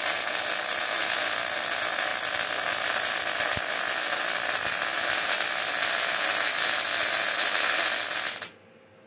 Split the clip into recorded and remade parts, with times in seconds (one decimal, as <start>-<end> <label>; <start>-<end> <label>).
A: 0.0-9.1 recorded